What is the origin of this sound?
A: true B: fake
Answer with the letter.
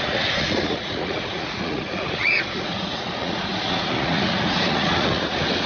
B